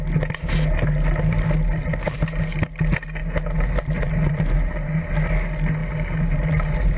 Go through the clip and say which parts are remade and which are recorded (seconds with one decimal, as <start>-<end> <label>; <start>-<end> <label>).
0.0-3.2 recorded; 3.2-5.0 remade; 5.0-5.8 recorded; 5.8-7.0 remade